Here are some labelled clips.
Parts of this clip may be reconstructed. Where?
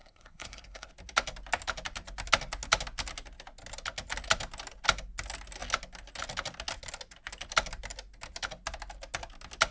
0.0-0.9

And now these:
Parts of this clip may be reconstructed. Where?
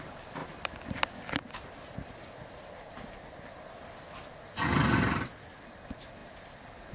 none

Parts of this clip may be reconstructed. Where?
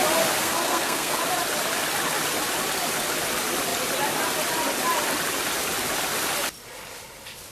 0.4-1.2